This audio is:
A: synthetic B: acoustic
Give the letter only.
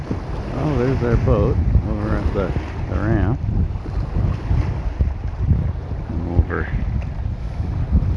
B